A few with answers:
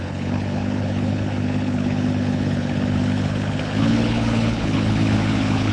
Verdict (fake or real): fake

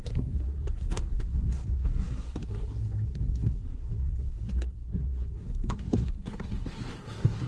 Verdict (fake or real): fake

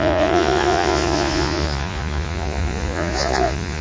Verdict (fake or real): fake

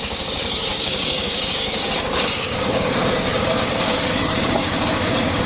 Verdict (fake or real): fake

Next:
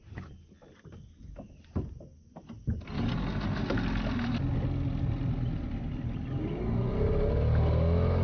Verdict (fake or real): real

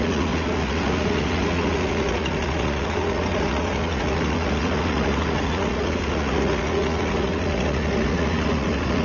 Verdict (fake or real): fake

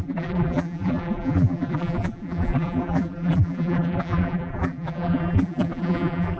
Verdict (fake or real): fake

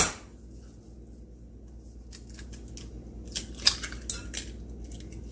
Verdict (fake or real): real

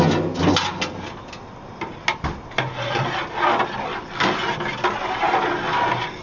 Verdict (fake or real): real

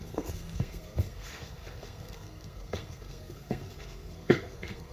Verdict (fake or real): fake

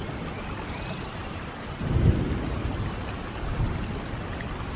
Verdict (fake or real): real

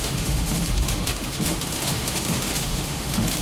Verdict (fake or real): fake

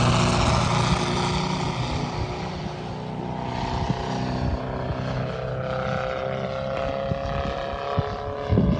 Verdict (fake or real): real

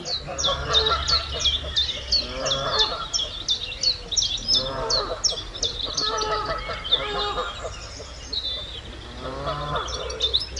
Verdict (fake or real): real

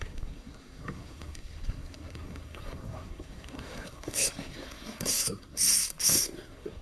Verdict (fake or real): fake